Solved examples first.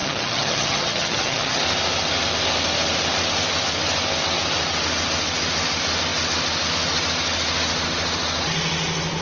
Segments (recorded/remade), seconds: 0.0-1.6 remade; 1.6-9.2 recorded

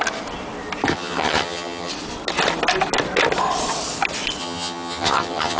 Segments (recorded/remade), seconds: 0.0-0.9 recorded; 0.9-1.9 remade; 1.9-4.4 recorded; 4.4-5.6 remade

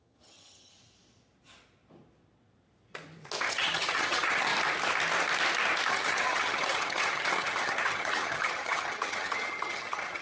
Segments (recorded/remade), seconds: 0.0-0.7 remade; 0.7-3.5 recorded; 3.5-4.5 remade; 4.5-5.9 recorded; 5.9-10.2 remade

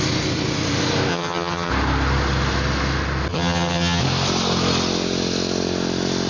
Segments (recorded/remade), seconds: 0.0-1.1 recorded; 1.1-1.7 remade; 1.7-3.3 recorded; 3.3-4.0 remade; 4.0-6.3 recorded

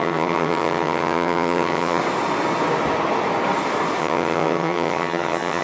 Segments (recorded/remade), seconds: 0.0-2.0 remade; 2.0-4.0 recorded; 4.0-5.6 remade

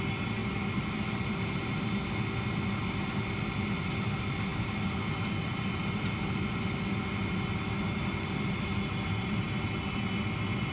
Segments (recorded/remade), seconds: 0.0-10.7 recorded

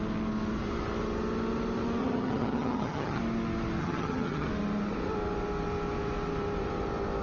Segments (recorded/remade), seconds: 0.0-2.0 recorded; 2.0-3.2 remade; 3.2-3.8 recorded; 3.8-4.5 remade; 4.5-7.2 recorded

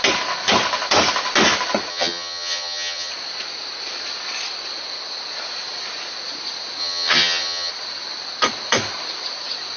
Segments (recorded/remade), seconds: 0.0-1.9 recorded; 1.9-3.1 remade; 3.1-6.8 recorded; 6.8-7.7 remade; 7.7-9.8 recorded